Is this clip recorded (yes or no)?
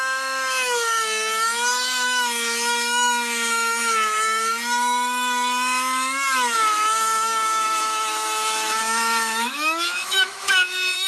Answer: no